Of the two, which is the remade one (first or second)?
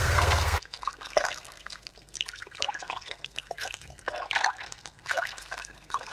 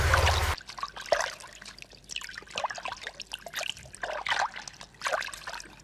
first